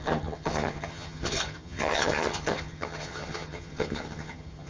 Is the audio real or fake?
fake